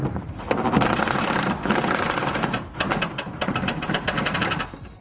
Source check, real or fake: fake